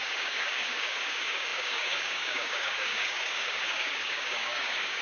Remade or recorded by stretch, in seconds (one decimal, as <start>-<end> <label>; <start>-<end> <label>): 0.0-5.0 remade